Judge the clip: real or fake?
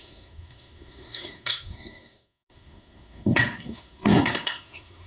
fake